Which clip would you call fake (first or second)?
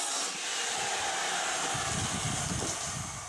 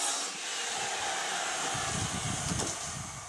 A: first